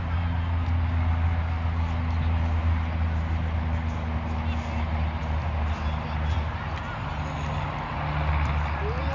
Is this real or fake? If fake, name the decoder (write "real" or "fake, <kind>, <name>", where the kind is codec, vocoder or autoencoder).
real